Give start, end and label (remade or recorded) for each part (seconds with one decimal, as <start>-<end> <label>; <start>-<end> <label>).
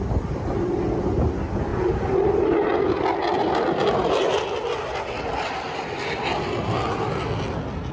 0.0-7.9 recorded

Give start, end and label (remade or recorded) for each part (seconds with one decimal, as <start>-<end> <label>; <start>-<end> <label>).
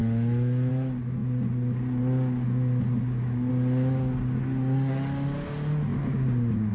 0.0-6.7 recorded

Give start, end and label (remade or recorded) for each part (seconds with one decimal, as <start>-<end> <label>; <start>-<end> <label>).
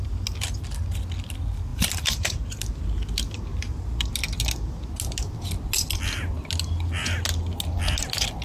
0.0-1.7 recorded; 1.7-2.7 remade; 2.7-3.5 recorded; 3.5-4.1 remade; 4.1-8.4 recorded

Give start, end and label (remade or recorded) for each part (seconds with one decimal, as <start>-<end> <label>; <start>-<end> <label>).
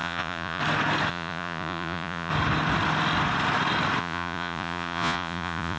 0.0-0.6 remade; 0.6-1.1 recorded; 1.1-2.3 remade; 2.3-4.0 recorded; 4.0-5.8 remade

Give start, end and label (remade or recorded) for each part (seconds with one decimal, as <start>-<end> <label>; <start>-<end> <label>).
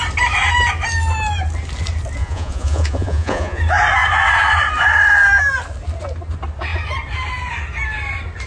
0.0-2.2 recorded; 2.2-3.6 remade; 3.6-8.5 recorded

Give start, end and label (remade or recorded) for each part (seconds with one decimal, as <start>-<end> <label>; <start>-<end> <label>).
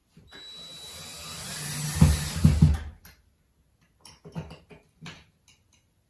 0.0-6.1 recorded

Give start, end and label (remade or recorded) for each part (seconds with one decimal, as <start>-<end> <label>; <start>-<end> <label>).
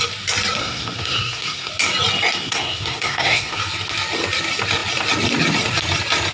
0.0-0.6 recorded; 0.6-1.7 remade; 1.7-2.4 recorded; 2.4-3.6 remade; 3.6-6.3 recorded